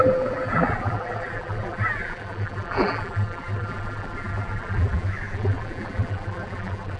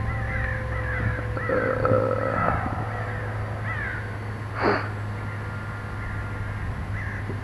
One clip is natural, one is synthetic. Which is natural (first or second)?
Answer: second